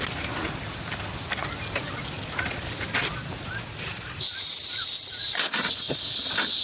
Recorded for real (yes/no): yes